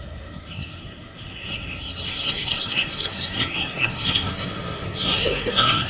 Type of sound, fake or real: fake